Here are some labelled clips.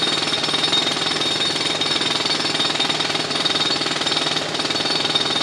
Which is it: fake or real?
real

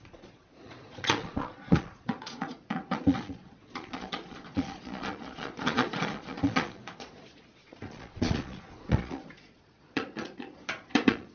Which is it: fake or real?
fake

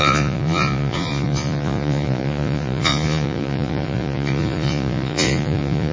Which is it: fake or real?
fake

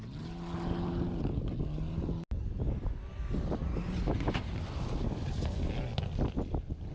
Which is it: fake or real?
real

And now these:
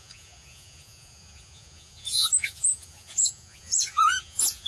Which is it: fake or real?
fake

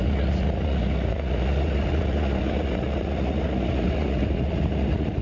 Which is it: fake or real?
fake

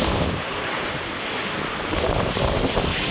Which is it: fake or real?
real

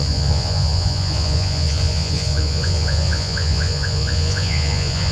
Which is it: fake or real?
fake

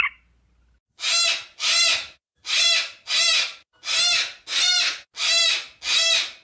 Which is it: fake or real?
real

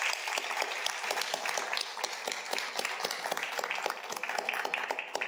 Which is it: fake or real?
real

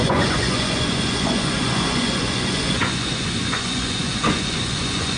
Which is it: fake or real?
fake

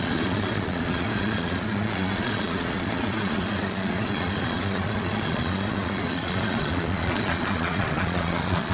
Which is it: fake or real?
fake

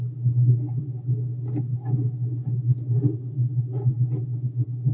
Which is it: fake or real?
real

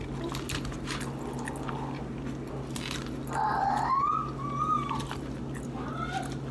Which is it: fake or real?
real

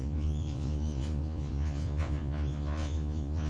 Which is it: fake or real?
fake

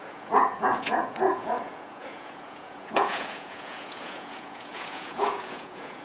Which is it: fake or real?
fake